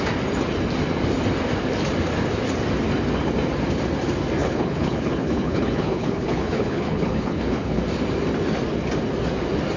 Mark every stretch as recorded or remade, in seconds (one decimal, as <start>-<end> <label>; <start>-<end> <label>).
0.0-4.4 recorded; 4.4-7.8 remade; 7.8-9.8 recorded